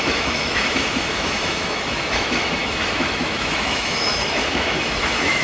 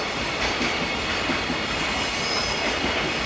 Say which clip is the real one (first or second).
second